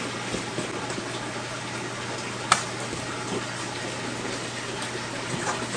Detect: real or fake real